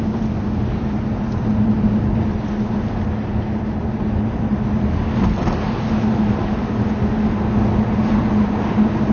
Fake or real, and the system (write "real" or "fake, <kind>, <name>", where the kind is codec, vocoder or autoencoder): real